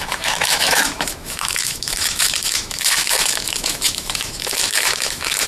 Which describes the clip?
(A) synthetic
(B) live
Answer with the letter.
A